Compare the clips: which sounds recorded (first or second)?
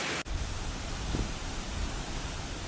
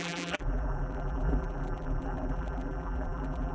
first